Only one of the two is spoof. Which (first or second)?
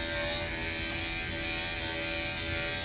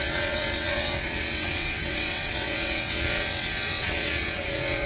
second